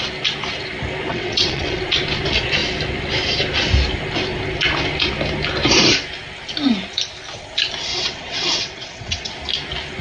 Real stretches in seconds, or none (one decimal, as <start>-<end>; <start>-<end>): 0.0-1.1; 1.8-7.9; 9.3-10.0